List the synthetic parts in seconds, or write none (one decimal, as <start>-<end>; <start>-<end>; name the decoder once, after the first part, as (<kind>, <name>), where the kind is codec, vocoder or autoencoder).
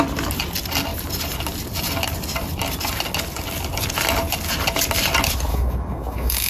5.5-6.5 (codec, DAC)